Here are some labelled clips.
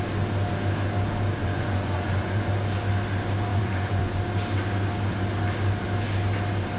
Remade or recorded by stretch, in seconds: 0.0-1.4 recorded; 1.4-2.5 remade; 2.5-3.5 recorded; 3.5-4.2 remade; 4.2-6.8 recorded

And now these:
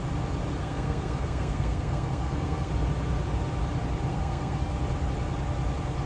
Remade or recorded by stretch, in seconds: 0.0-0.6 recorded; 0.6-2.7 remade; 2.7-4.1 recorded; 4.1-4.7 remade; 4.7-6.1 recorded

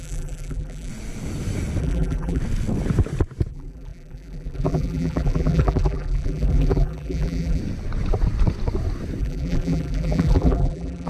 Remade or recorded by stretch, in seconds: 0.0-0.9 remade; 0.9-1.8 recorded; 1.8-2.4 remade; 2.4-3.5 recorded; 3.5-7.6 remade; 7.6-9.2 recorded; 9.2-11.1 remade

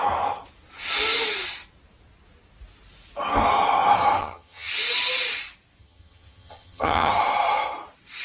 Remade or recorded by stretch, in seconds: 0.0-4.2 recorded; 4.2-4.7 remade; 4.7-5.8 recorded; 5.8-7.1 remade; 7.1-8.2 recorded

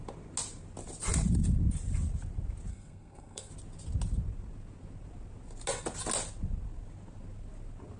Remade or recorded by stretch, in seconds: 0.0-2.7 recorded; 2.7-3.5 remade; 3.5-8.0 recorded